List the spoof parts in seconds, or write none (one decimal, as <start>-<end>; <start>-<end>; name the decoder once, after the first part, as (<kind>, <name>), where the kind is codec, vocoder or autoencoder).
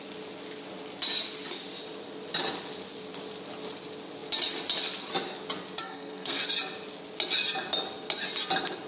5.8-6.4 (codec, SNAC)